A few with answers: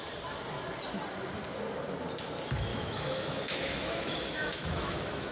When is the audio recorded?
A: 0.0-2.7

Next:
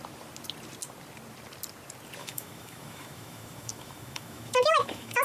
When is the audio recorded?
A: 0.0-2.2

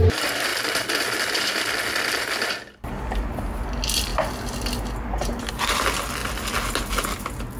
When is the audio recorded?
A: 0.0-7.6

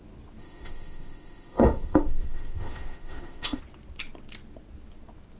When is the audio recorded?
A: 0.0-0.4; 3.6-5.4

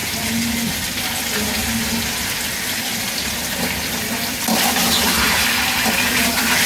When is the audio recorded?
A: 0.0-6.7

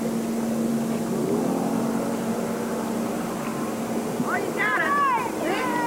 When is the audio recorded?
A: 0.0-5.9

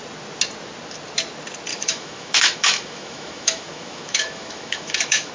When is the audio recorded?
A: 0.0-1.7